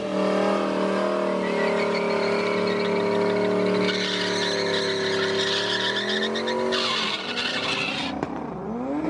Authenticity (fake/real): real